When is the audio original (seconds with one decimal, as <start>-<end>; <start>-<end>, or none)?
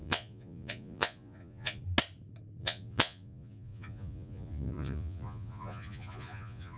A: 1.8-2.6